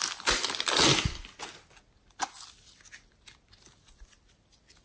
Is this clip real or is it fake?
real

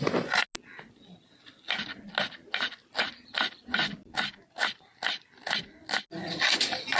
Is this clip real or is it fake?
real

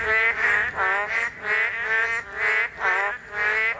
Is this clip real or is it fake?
real